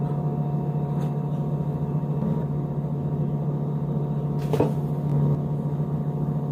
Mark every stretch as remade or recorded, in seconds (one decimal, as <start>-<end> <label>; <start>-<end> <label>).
0.0-5.1 remade; 5.1-6.5 recorded